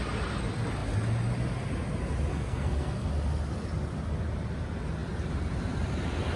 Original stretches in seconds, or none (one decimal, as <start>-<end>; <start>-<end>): 0.0-2.3; 3.1-6.4

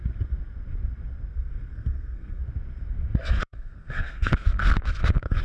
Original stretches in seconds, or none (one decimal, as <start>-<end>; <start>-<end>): 0.0-1.3; 2.4-3.4

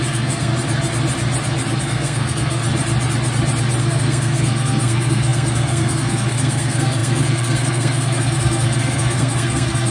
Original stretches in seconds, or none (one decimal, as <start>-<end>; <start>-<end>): 0.5-1.8; 2.6-3.8

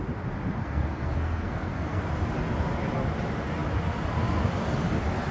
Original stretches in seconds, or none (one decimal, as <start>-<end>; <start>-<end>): 0.0-0.6; 2.0-5.3

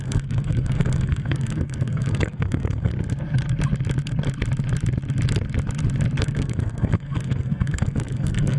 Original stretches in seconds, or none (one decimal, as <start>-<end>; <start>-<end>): 2.9-6.2

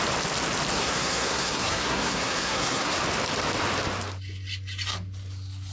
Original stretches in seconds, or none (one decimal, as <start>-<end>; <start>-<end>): 0.0-0.7; 3.0-5.7